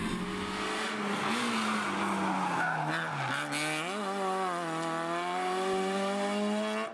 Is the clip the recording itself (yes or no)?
yes